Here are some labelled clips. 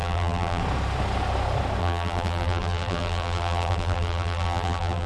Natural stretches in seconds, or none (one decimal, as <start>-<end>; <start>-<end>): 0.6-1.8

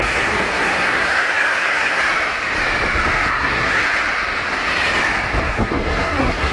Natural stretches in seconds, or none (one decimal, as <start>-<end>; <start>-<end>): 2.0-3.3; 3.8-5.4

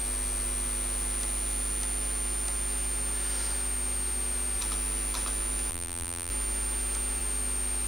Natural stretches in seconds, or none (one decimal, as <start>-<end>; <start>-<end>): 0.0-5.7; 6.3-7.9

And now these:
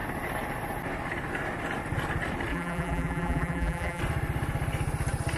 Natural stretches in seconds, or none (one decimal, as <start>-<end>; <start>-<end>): 0.0-2.5; 4.0-5.4

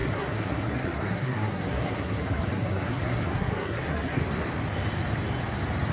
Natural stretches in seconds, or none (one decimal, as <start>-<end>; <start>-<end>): 4.2-5.9

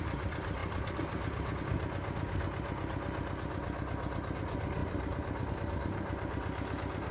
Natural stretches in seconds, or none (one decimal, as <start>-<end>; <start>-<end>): 0.0-0.6; 1.6-4.8; 5.5-7.1